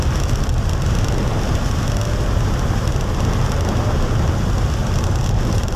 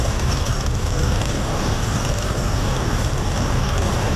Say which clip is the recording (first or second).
first